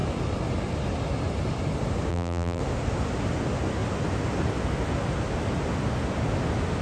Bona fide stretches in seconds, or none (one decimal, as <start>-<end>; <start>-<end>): 0.0-2.1; 2.6-6.8